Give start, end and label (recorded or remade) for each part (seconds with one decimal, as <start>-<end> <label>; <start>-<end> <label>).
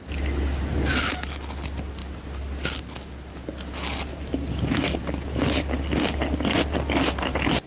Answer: 0.0-7.7 recorded